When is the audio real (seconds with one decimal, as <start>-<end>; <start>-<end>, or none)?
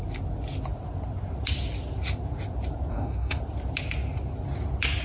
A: 0.0-2.9; 3.4-5.0